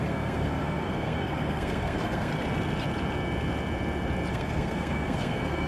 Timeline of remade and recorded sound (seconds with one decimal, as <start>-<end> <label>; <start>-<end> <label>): 0.0-2.3 remade; 2.3-4.3 recorded; 4.3-5.7 remade